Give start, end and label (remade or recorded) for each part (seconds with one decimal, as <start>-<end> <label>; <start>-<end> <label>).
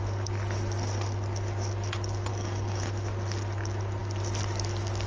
0.0-2.3 recorded; 2.3-2.8 remade; 2.8-5.1 recorded